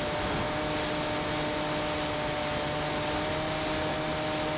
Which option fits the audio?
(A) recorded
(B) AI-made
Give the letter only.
A